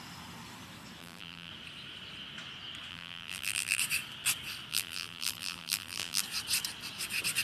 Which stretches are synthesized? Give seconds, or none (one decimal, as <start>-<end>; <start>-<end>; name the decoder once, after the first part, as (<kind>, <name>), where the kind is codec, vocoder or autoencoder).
1.0-1.5 (vocoder, BigVGAN v2); 2.9-3.8; 4.7-6.2